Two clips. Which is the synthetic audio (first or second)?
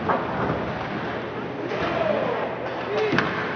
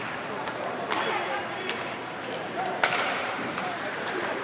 second